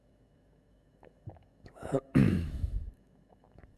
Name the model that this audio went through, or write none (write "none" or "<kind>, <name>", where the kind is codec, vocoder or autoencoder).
autoencoder, DAC-VAE